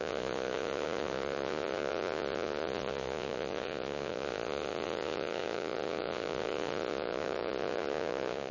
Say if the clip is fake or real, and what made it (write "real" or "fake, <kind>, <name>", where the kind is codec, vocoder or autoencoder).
fake, vocoder, Vocos